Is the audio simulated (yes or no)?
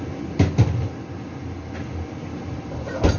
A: no